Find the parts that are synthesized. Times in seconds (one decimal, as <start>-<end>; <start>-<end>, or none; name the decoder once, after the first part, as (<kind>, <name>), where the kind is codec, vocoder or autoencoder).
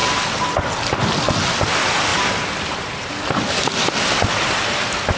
0.0-0.9 (vocoder, BigVGAN v2); 2.1-3.1